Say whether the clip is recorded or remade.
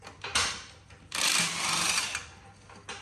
recorded